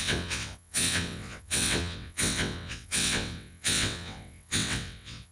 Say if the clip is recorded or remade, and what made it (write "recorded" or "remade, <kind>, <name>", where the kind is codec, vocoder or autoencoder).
remade, vocoder, WaveNeXt